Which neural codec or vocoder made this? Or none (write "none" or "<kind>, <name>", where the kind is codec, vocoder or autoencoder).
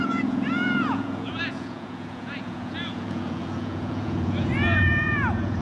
vocoder, Vocos